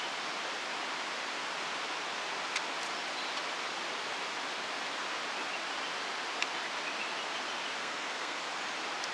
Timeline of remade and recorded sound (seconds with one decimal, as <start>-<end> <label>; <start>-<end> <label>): 0.0-7.8 recorded; 7.8-8.4 remade; 8.4-9.1 recorded